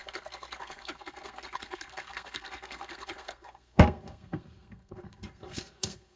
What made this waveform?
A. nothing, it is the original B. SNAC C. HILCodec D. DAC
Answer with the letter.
B